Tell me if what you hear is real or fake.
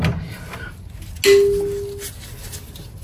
real